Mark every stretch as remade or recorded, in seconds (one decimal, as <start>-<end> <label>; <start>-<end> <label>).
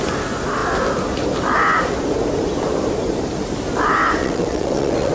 0.0-4.2 recorded; 4.2-5.1 remade